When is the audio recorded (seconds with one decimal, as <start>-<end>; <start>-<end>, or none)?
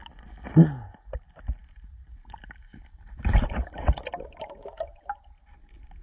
0.0-6.0